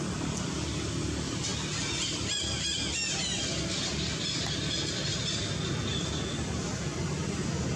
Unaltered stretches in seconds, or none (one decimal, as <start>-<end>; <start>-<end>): 0.0-7.8

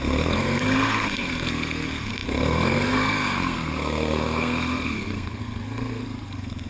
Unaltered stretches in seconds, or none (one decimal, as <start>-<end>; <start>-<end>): none